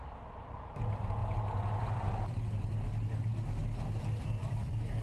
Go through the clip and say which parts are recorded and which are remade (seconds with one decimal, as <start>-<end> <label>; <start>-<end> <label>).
0.0-1.2 remade; 1.2-1.9 recorded; 1.9-3.3 remade; 3.3-3.9 recorded; 3.9-5.0 remade